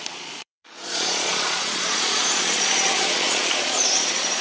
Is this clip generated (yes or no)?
yes